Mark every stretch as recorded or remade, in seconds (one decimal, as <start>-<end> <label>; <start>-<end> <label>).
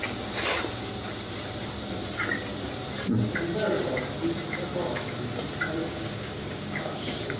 0.0-5.8 recorded; 5.8-7.4 remade